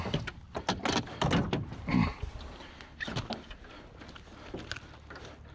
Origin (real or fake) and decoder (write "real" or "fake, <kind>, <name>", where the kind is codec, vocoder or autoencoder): real